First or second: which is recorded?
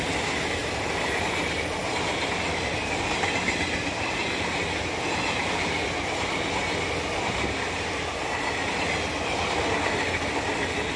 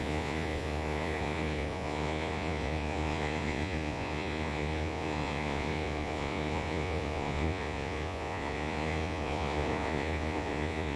first